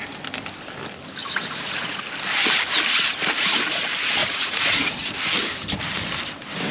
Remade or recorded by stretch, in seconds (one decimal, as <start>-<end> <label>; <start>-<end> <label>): 0.0-1.2 recorded; 1.2-2.0 remade; 2.0-4.2 recorded; 4.2-4.8 remade; 4.8-6.7 recorded

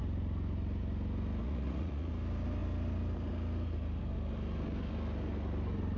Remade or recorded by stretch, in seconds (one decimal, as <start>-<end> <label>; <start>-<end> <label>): 0.0-1.4 recorded; 1.4-2.1 remade; 2.1-6.0 recorded

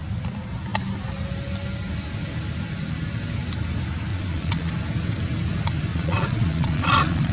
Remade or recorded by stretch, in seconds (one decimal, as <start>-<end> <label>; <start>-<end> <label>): 0.0-4.1 recorded; 4.1-4.7 remade; 4.7-5.9 recorded; 5.9-7.3 remade